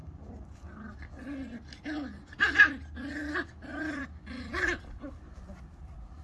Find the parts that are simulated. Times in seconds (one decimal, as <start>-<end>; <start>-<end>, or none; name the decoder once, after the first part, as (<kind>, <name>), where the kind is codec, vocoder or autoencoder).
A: none